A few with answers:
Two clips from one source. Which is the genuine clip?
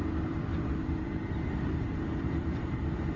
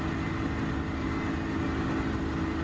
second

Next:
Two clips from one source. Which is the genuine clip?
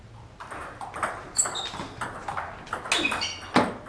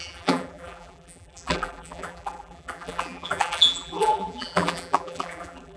first